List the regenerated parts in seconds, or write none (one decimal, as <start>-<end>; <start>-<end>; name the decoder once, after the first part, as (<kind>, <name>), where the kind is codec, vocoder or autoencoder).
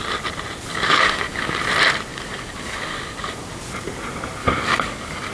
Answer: 0.7-1.6 (codec, DAC); 2.1-3.3; 4.4-5.3